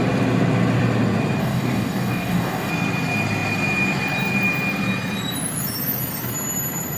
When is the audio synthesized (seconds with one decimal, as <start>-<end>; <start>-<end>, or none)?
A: 1.4-2.7